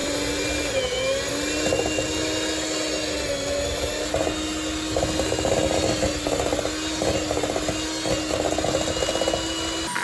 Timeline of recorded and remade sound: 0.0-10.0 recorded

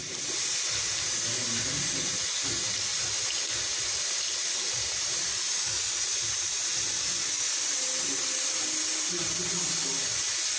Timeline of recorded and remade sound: 0.0-8.9 recorded; 8.9-9.7 remade; 9.7-10.6 recorded